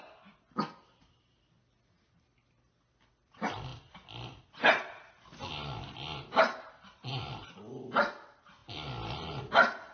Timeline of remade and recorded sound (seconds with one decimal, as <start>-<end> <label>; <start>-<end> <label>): 0.0-9.9 recorded